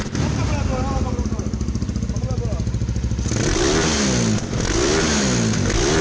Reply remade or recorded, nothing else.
recorded